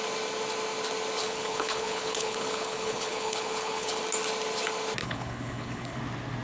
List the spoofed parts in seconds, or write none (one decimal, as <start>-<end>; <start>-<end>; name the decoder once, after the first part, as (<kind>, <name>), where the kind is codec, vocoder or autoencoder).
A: 1.2-4.0 (codec, HILCodec); 5.0-6.0